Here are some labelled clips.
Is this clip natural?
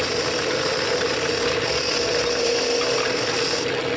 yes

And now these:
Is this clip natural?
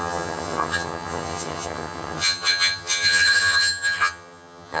no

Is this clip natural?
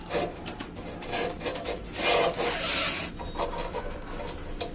yes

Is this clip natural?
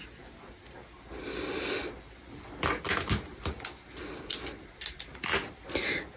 yes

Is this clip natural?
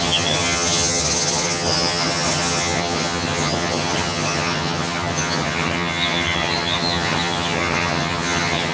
no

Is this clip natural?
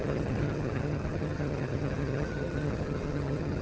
no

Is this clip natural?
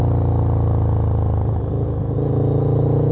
yes